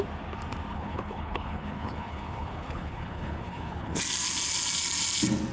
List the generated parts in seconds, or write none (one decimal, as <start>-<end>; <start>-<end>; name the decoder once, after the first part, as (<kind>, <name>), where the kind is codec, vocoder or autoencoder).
0.7-4.0 (codec, HILCodec)